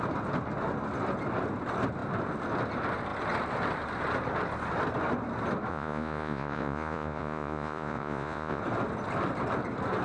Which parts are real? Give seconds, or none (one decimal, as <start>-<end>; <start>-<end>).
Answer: 0.0-5.7; 8.6-10.0